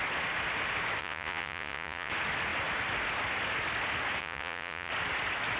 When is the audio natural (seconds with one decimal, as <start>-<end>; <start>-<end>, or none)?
0.0-1.0; 2.1-4.2; 4.9-5.6